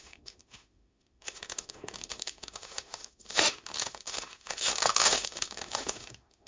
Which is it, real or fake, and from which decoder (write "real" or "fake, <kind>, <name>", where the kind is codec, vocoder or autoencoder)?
fake, autoencoder, DAC-VAE